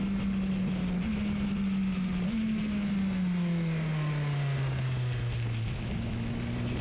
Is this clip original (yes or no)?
yes